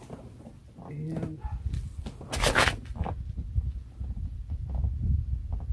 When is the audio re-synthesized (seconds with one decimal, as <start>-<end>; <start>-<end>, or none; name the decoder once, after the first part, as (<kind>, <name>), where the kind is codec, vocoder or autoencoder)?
none